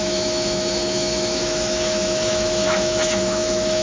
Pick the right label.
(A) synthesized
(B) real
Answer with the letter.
A